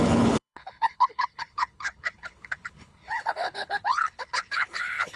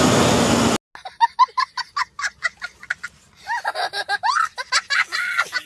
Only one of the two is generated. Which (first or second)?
first